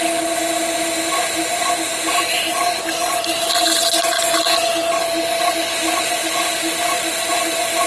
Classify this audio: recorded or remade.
recorded